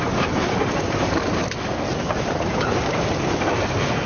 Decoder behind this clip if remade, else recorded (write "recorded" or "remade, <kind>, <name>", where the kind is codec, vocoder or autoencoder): remade, vocoder, BigVGAN v2